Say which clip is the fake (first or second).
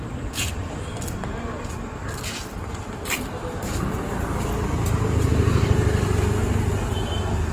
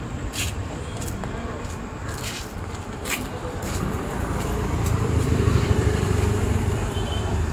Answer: second